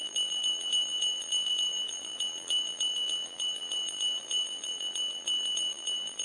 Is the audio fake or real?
fake